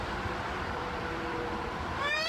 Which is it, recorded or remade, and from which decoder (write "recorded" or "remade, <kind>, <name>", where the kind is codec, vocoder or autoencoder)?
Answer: recorded